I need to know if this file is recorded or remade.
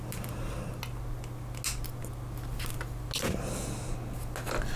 recorded